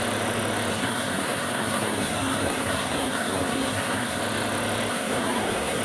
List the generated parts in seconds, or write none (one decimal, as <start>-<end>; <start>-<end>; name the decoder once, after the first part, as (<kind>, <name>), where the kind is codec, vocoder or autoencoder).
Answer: 0.7-4.2 (codec, SNAC); 4.9-5.8